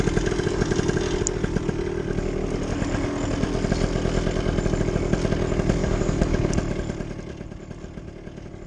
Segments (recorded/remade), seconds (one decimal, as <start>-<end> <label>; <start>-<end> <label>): 0.0-5.8 recorded; 5.8-6.5 remade; 6.5-8.7 recorded